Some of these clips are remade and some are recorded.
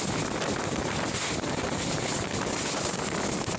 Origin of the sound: recorded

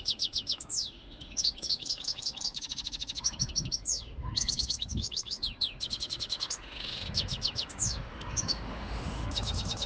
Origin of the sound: remade